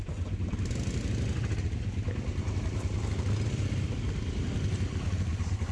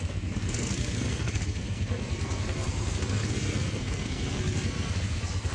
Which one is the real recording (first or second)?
first